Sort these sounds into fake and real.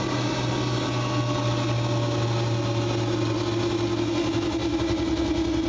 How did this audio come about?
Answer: real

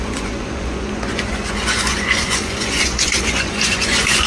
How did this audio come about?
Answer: fake